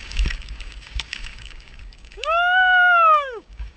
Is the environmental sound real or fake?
fake